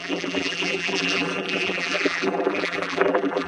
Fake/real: fake